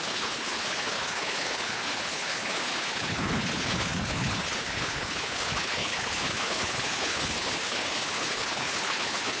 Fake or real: fake